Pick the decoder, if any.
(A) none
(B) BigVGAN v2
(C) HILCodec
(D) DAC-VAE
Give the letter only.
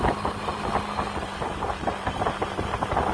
A